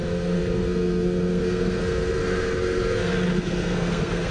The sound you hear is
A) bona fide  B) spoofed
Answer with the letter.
B